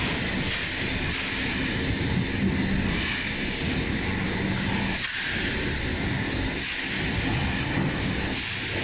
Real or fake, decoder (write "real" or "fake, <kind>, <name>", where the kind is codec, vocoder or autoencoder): real